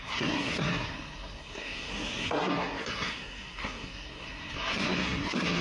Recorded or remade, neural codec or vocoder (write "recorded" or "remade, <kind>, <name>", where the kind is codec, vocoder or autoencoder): remade, codec, SNAC